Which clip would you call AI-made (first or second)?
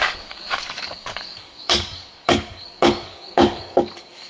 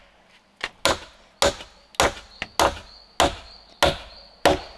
first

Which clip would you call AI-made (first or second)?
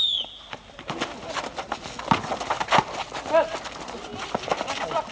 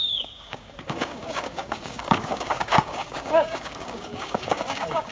second